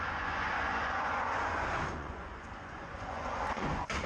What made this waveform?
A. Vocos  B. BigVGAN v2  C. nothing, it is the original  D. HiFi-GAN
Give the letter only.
A